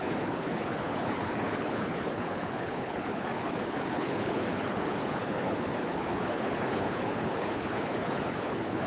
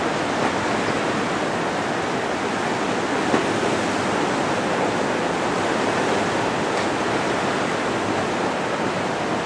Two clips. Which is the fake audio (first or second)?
first